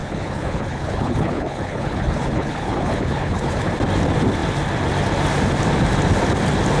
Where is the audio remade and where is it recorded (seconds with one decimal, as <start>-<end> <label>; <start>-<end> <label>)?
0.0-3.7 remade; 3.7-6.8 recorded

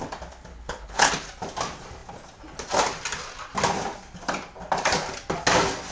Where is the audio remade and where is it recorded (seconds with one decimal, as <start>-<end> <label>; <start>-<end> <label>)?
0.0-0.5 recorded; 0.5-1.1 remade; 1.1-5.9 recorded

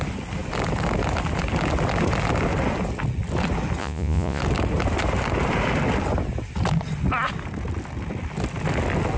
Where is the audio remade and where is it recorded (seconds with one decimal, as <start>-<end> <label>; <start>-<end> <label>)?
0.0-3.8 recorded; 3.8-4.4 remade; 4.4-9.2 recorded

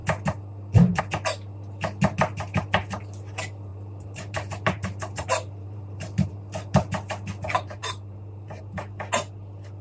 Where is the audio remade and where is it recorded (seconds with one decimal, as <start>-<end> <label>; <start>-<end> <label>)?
0.0-3.7 recorded; 3.7-6.3 remade; 6.3-7.8 recorded; 7.8-8.6 remade; 8.6-9.8 recorded

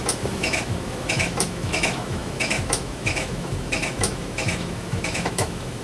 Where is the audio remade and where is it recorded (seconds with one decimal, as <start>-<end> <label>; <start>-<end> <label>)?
0.0-5.8 remade